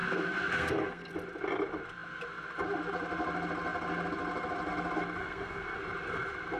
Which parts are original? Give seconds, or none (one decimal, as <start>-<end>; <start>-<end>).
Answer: 1.1-5.2; 5.8-6.6